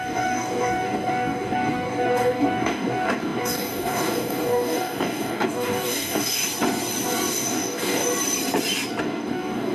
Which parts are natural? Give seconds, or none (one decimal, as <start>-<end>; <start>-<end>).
6.4-7.3; 8.0-9.0